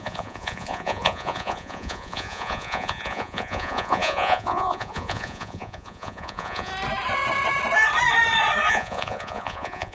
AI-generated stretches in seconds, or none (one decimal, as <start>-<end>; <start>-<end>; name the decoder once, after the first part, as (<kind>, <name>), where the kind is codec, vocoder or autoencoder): 0.0-6.7 (vocoder, Vocos); 8.7-9.9